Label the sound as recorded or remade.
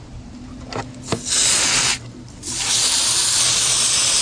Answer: recorded